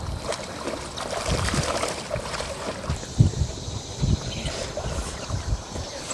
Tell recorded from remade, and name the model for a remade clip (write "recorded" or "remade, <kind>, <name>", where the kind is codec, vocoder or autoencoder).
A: recorded